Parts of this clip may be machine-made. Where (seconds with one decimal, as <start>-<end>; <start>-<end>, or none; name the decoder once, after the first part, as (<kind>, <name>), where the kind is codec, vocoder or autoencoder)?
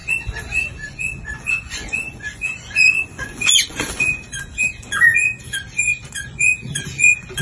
0.0-7.4 (vocoder, Vocos)